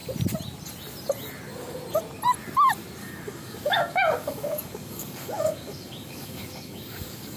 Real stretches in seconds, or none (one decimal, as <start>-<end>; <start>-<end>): 0.0-3.0